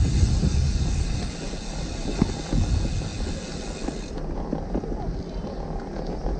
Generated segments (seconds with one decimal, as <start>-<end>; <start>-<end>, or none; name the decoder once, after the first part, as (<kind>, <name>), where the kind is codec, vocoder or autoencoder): none